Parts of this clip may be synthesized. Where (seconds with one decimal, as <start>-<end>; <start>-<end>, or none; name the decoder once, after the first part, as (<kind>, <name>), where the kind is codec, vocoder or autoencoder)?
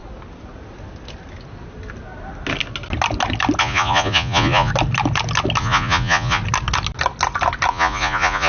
3.6-4.7 (vocoder, Vocos); 5.6-6.4; 7.7-8.5